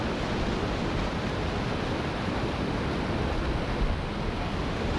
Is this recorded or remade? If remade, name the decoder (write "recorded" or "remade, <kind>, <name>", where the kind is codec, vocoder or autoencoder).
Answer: recorded